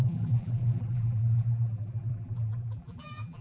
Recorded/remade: remade